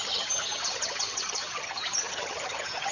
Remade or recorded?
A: remade